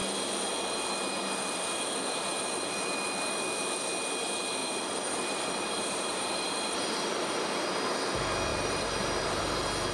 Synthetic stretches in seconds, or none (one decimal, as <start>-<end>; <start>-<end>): 4.6-7.4; 8.5-9.4